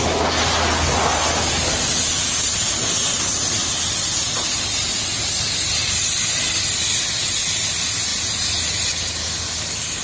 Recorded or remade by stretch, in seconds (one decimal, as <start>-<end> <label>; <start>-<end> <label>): 0.0-10.0 recorded